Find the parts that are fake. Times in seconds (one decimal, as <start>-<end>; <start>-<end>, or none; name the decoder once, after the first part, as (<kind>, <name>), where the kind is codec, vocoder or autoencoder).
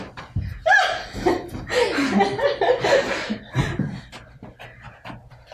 none